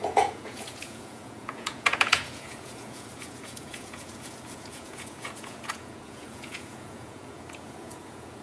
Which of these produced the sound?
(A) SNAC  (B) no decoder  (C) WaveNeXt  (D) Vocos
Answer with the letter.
D